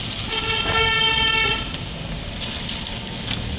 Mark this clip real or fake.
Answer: real